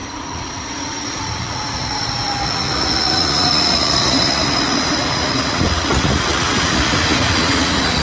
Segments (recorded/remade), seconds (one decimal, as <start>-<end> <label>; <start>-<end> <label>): 0.0-8.0 remade

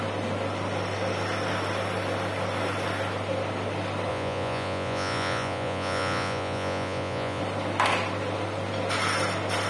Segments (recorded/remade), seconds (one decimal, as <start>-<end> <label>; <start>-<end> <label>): 0.0-4.1 recorded; 4.1-7.4 remade; 7.4-9.7 recorded

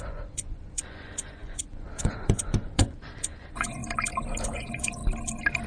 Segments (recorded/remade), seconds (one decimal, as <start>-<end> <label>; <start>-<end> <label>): 0.0-3.8 remade; 3.8-4.4 recorded; 4.4-5.0 remade; 5.0-5.7 recorded

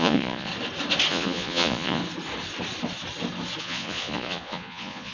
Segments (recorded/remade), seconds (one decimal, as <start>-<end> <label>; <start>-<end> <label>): 0.0-0.5 remade; 0.5-1.1 recorded; 1.1-2.0 remade; 2.0-3.6 recorded; 3.6-5.1 remade